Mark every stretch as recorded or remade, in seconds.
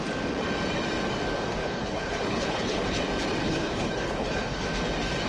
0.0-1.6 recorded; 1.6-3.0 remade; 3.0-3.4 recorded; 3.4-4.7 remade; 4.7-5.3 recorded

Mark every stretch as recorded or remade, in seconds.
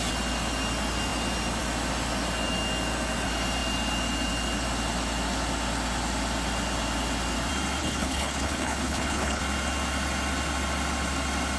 0.0-7.8 recorded; 7.8-9.4 remade; 9.4-11.6 recorded